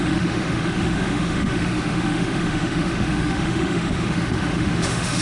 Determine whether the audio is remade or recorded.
remade